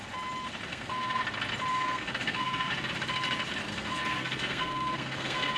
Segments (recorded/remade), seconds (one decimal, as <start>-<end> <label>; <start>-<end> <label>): 0.0-0.7 recorded; 0.7-1.2 remade; 1.2-1.7 recorded; 1.7-2.7 remade; 2.7-3.7 recorded; 3.7-5.6 remade